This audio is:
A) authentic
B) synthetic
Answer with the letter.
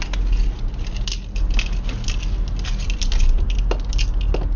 A